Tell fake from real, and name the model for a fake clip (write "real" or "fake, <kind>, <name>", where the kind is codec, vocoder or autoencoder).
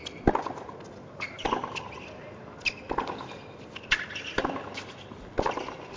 real